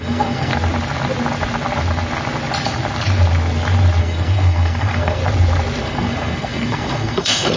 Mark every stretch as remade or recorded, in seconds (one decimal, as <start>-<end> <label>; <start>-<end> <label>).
0.0-0.5 remade; 0.5-4.0 recorded; 4.0-5.2 remade; 5.2-5.8 recorded; 5.8-7.6 remade